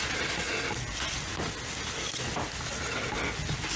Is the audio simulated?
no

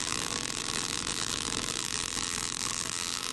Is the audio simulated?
yes